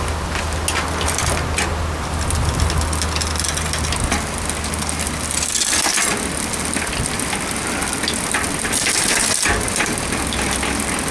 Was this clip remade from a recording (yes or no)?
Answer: no